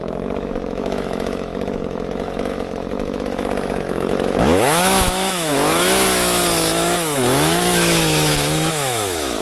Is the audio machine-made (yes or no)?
yes